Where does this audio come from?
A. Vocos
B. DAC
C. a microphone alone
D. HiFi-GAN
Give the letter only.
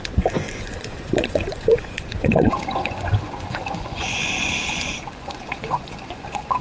A